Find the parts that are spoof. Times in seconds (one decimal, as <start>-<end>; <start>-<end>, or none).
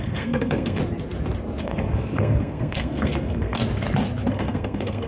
0.0-0.8; 1.6-3.6; 4.3-5.1